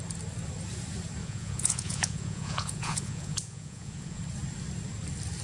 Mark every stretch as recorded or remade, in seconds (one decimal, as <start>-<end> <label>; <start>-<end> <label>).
0.0-1.2 recorded; 1.2-4.2 remade; 4.2-5.4 recorded